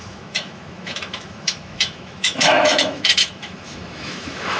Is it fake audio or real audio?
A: fake